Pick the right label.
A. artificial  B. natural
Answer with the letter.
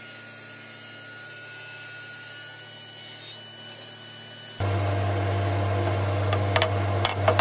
B